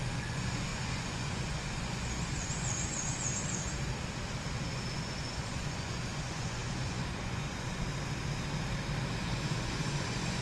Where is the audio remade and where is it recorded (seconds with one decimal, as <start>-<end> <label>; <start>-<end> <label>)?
0.0-3.7 remade; 3.7-4.6 recorded; 4.6-7.8 remade; 7.8-9.2 recorded; 9.2-10.4 remade

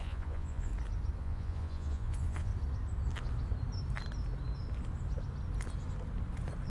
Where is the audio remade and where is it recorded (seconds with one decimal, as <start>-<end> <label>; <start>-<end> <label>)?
0.0-0.7 remade; 0.7-1.2 recorded; 1.2-2.5 remade; 2.5-6.7 recorded

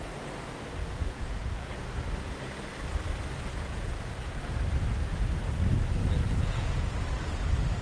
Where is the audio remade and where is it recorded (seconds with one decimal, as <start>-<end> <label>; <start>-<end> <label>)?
0.0-0.8 recorded; 0.8-1.7 remade; 1.7-3.5 recorded; 3.5-4.4 remade; 4.4-6.0 recorded; 6.0-6.8 remade; 6.8-7.8 recorded